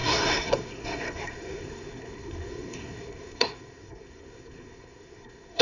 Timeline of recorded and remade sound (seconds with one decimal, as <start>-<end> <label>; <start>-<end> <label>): 0.0-5.6 remade